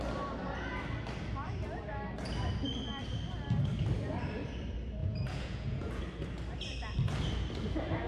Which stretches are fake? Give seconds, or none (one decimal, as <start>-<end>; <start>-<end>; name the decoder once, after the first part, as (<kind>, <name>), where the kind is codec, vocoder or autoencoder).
5.0-6.0 (vocoder, Vocos)